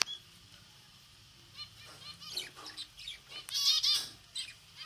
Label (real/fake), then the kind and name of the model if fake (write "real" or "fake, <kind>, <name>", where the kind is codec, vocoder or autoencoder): real